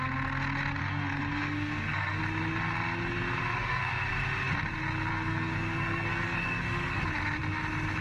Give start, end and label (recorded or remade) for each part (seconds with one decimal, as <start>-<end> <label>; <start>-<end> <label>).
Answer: 0.0-0.8 recorded; 0.8-2.2 remade; 2.2-3.6 recorded; 3.6-4.1 remade; 4.1-5.1 recorded; 5.1-7.0 remade; 7.0-8.0 recorded